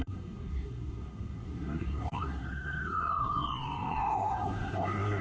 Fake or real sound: fake